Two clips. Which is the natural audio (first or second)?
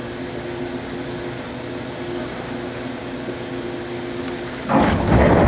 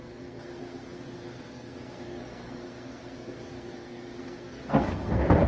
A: first